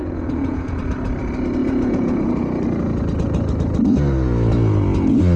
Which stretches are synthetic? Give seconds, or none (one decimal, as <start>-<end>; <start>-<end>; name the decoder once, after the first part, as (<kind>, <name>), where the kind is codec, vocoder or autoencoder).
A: 0.0-0.8 (vocoder, Vocos); 1.6-2.3